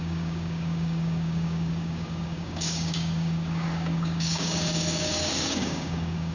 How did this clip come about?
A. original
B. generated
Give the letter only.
B